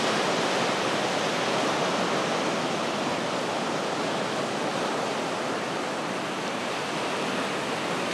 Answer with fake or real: real